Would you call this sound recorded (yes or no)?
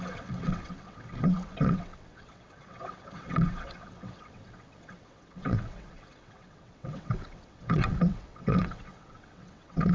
no